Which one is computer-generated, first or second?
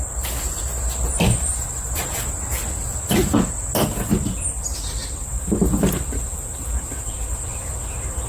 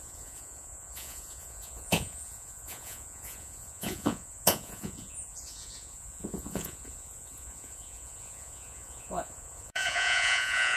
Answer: second